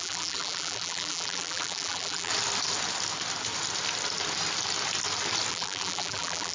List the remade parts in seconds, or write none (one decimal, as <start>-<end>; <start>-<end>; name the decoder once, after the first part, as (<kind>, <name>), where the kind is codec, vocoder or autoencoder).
0.0-2.3 (vocoder, BigVGAN v2); 5.5-6.5